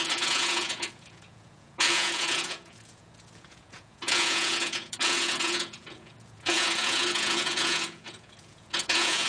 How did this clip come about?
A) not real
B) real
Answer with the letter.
A